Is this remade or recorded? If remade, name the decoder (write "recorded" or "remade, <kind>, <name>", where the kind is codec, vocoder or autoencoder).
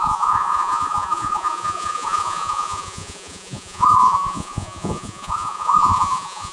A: remade, vocoder, Vocos